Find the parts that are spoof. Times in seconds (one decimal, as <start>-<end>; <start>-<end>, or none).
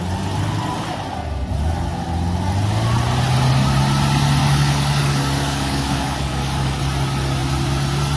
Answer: 4.4-6.8